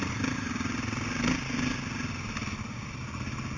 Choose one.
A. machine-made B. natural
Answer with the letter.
B